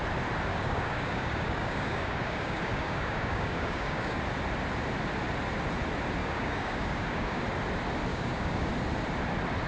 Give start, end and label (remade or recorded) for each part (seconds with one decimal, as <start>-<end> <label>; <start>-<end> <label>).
0.0-0.5 recorded; 0.5-4.2 remade; 4.2-6.2 recorded; 6.2-7.4 remade; 7.4-8.1 recorded; 8.1-8.7 remade; 8.7-9.7 recorded